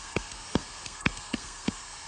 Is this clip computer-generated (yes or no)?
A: yes